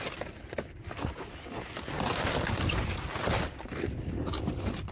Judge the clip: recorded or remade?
recorded